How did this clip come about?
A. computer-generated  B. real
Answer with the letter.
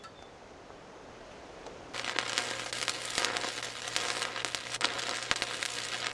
B